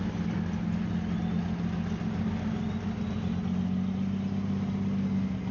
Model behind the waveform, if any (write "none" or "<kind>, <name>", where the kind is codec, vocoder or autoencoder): none